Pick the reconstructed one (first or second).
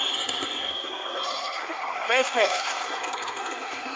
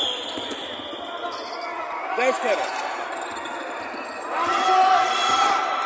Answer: first